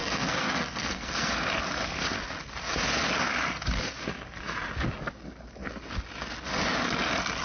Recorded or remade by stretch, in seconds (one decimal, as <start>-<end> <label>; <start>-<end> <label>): 0.0-1.3 remade; 1.3-7.4 recorded